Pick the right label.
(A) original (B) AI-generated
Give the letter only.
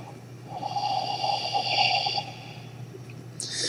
A